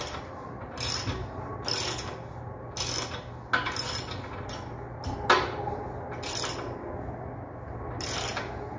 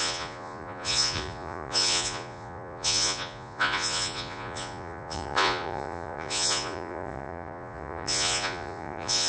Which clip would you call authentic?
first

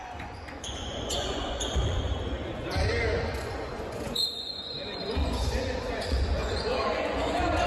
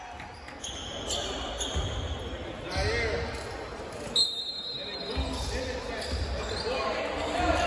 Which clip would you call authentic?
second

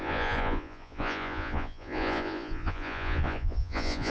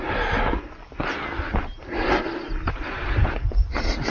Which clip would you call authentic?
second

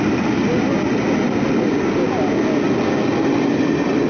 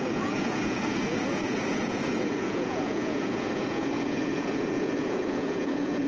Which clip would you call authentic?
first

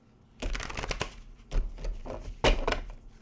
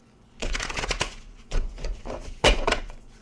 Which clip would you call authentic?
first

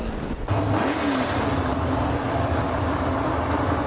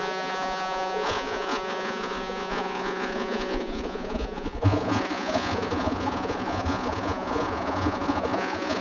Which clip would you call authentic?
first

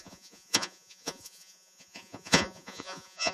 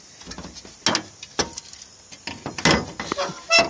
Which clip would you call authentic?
second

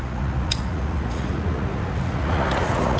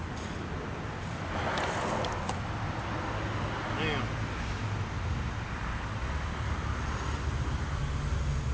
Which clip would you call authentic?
second